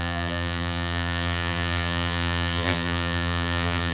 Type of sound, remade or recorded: remade